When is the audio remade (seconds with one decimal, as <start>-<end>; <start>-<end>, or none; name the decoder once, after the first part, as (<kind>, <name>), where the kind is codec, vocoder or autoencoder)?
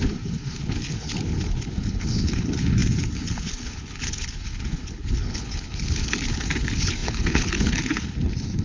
0.0-8.6 (codec, HILCodec)